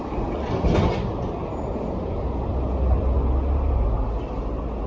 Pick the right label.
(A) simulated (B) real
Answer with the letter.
B